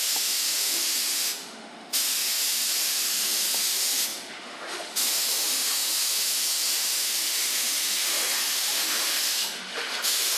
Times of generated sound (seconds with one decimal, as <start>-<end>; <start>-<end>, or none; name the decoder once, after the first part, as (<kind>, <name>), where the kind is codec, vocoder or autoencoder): 0.0-10.4 (autoencoder, DAC-VAE)